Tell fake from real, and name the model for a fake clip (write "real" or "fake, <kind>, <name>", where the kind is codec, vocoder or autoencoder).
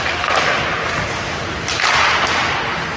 real